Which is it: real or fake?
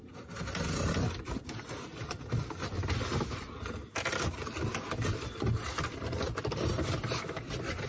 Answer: real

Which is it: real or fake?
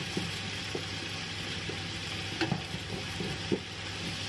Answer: real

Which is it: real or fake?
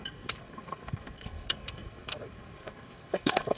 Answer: fake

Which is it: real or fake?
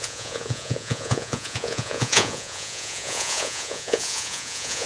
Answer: fake